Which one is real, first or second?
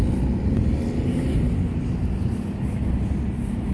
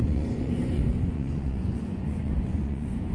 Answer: first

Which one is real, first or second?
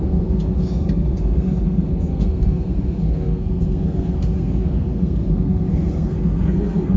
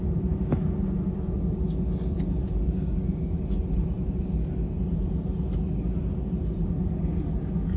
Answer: second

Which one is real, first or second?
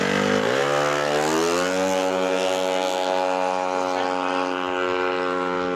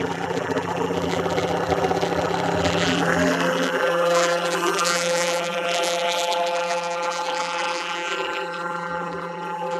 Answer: first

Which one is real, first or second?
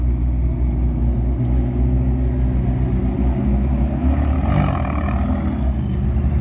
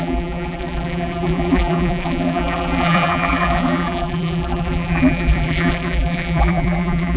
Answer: first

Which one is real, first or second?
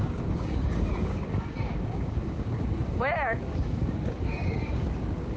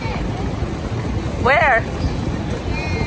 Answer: second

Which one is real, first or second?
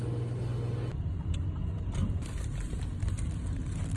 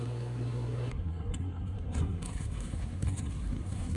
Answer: first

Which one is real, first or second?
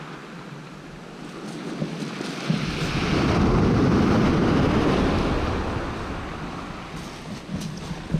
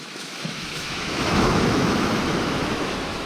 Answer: first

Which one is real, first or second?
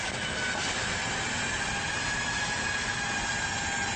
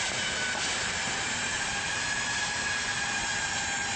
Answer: first